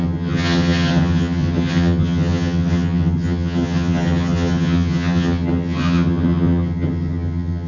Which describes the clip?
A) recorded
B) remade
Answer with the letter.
B